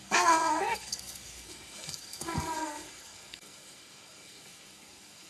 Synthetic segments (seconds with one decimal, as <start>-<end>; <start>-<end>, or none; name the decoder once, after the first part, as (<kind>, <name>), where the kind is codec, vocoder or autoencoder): 0.0-5.3 (codec, SNAC)